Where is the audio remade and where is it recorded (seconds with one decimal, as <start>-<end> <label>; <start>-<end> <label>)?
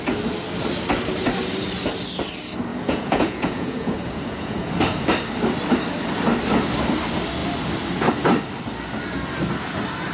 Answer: 0.0-2.7 recorded; 2.7-4.7 remade; 4.7-10.1 recorded